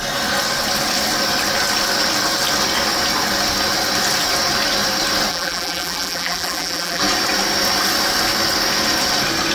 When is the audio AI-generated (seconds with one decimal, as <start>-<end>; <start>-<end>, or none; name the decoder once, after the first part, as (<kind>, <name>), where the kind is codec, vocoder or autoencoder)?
5.3-7.0 (vocoder, BigVGAN v2)